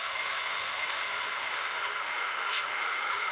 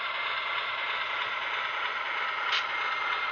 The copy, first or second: first